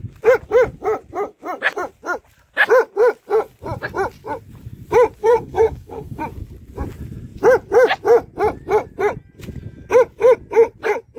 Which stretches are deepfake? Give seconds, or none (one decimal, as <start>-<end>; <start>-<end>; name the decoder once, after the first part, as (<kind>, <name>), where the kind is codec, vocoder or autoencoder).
5.2-6.2 (codec, SNAC)